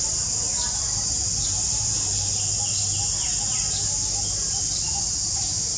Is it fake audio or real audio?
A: real